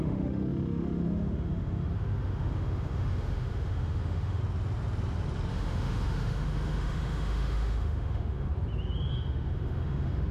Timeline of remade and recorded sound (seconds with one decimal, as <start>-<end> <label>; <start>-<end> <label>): 0.0-4.4 remade; 4.4-5.5 recorded; 5.5-8.5 remade; 8.5-9.1 recorded; 9.1-10.3 remade